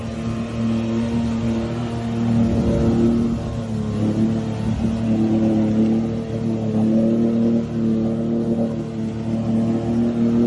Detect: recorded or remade recorded